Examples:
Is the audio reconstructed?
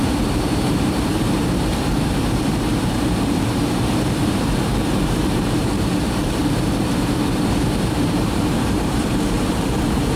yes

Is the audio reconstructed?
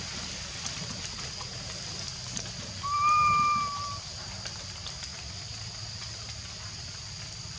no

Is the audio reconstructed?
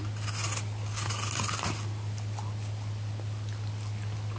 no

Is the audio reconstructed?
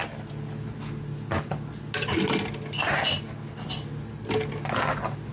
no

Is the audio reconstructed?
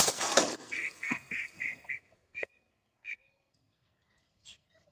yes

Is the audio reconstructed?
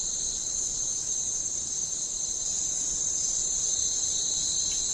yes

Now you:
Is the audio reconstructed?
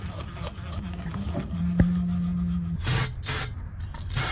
no